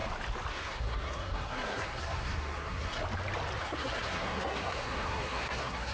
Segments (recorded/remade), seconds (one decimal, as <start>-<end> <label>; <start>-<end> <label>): 0.0-0.5 recorded; 0.5-3.0 remade; 3.0-3.6 recorded; 3.6-5.9 remade